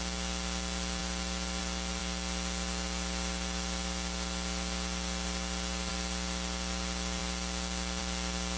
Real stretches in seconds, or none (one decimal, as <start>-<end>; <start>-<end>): 0.0-8.6